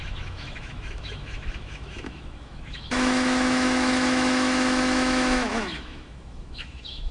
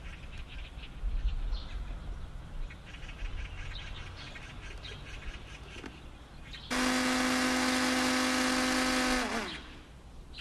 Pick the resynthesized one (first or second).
first